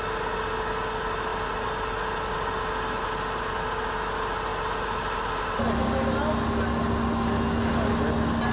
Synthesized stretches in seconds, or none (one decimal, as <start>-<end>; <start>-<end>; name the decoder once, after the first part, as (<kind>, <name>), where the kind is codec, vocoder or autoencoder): none